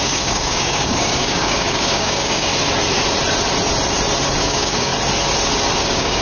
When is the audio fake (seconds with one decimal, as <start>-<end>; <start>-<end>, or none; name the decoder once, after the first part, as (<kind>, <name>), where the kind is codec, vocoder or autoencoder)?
0.0-2.5 (codec, DAC); 4.4-4.9; 5.8-6.2